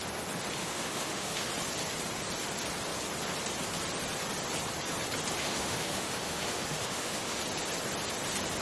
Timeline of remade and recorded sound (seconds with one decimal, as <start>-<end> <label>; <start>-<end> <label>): 0.0-0.6 recorded; 0.6-1.5 remade; 1.5-5.4 recorded; 5.4-7.4 remade; 7.4-8.6 recorded

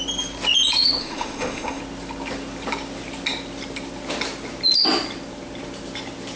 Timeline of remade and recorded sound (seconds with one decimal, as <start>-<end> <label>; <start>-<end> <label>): 0.0-1.0 recorded; 1.0-1.8 remade; 1.8-6.4 recorded

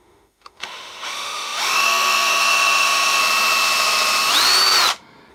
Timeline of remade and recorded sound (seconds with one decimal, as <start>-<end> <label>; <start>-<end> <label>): 0.0-3.2 remade; 3.2-5.3 recorded

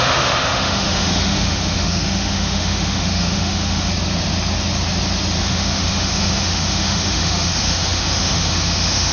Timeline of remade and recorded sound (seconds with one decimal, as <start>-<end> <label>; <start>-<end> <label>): 0.0-3.9 remade; 3.9-5.4 recorded; 5.4-9.1 remade

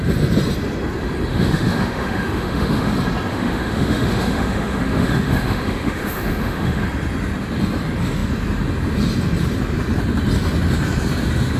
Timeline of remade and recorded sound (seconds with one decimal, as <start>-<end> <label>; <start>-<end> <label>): 0.0-1.3 recorded; 1.3-2.9 remade; 2.9-3.3 recorded; 3.3-6.8 remade; 6.8-11.6 recorded

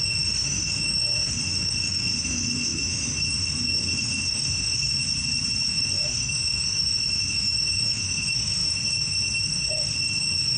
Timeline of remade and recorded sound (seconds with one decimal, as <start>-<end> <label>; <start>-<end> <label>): 0.0-5.0 remade; 5.0-5.7 recorded; 5.7-10.6 remade